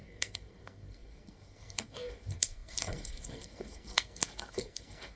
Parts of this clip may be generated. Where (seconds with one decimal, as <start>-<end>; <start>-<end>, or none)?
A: 0.0-5.2